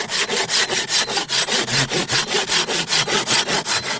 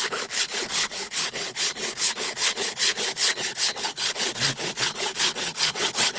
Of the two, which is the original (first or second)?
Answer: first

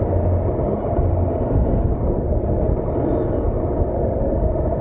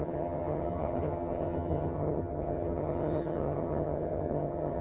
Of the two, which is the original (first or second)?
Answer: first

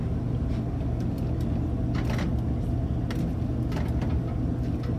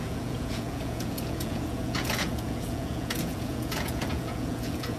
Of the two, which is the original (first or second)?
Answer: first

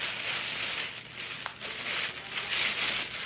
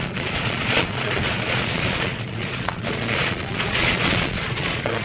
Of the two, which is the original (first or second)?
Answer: first